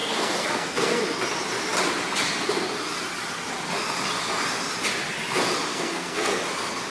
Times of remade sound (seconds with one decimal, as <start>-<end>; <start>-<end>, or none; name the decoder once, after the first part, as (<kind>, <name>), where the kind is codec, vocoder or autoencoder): 0.0-1.0 (codec, SNAC); 5.7-6.4